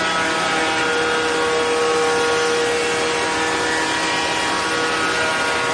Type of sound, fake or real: real